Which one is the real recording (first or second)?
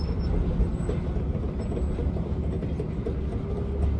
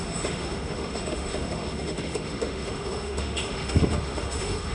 first